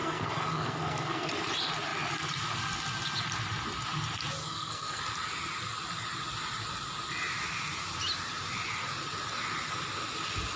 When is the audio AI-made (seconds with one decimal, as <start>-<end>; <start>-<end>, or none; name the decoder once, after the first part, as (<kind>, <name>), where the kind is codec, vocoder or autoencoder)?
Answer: 0.0-1.3 (codec, SNAC); 4.4-5.0